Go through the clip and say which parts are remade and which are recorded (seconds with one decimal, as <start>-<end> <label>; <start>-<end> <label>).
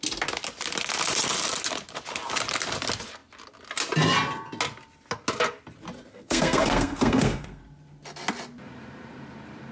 0.0-6.1 recorded; 6.1-7.6 remade; 7.6-9.7 recorded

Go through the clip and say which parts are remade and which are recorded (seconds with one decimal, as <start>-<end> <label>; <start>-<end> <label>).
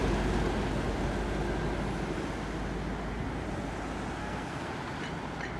0.0-4.2 recorded; 4.2-4.7 remade; 4.7-5.6 recorded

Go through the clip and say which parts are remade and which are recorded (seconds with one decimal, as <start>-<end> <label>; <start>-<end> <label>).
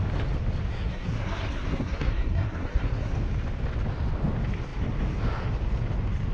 0.0-0.7 recorded; 0.7-3.1 remade; 3.1-6.3 recorded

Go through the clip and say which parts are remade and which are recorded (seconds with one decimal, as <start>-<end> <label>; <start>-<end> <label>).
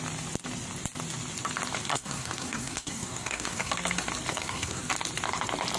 0.0-1.9 recorded; 1.9-3.7 remade; 3.7-4.3 recorded; 4.3-4.8 remade; 4.8-5.8 recorded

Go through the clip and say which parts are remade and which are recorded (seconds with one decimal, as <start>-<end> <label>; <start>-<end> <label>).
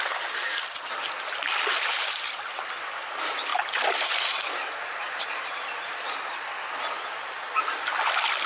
0.0-8.5 recorded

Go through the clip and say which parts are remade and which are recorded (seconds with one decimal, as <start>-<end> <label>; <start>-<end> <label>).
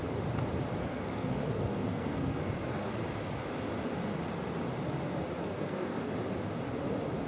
0.0-0.8 recorded; 0.8-2.9 remade; 2.9-5.4 recorded; 5.4-6.1 remade; 6.1-7.3 recorded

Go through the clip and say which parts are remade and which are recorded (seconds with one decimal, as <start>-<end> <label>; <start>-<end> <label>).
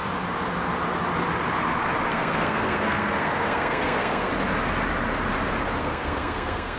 0.0-2.1 recorded; 2.1-4.3 remade; 4.3-5.8 recorded; 5.8-6.8 remade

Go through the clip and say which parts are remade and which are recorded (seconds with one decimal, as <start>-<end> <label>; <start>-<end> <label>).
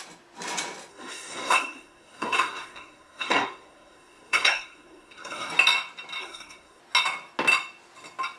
0.0-0.9 recorded; 0.9-5.5 remade; 5.5-6.2 recorded; 6.2-6.8 remade; 6.8-8.4 recorded